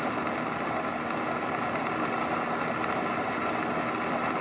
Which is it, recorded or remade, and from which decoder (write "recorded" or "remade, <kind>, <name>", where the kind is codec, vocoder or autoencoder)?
recorded